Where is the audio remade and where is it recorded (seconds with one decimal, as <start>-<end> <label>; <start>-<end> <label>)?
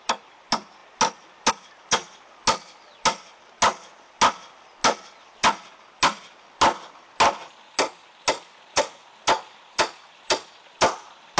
0.0-11.4 recorded